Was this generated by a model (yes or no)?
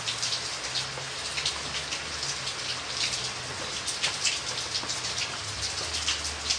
no